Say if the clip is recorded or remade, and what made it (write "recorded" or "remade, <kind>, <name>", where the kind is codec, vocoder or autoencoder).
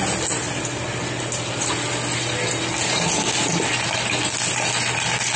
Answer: recorded